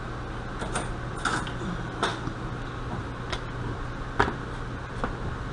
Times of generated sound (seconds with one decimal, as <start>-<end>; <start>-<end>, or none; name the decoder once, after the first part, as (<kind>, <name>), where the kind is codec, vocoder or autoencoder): none